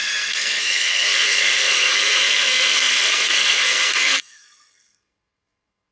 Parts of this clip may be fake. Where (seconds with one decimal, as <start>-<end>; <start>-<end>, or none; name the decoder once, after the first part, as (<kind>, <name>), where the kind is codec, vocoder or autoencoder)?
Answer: 0.0-5.9 (codec, SNAC)